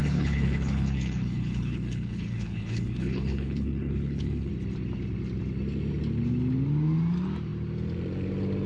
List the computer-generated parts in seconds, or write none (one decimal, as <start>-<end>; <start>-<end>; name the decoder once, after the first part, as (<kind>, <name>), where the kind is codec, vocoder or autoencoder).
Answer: 0.0-4.5 (codec, HILCodec)